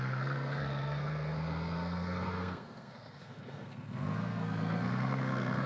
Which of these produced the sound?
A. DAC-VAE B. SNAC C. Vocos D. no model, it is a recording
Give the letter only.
B